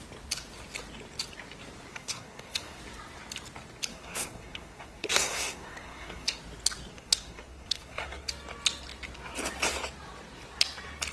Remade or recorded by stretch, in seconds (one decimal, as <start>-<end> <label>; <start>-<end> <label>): 0.0-1.9 recorded; 1.9-2.8 remade; 2.8-3.9 recorded; 3.9-6.4 remade; 6.4-6.9 recorded; 6.9-8.3 remade; 8.3-11.1 recorded